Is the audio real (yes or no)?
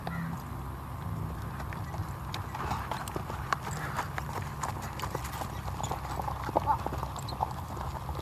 yes